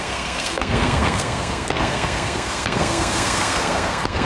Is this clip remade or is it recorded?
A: remade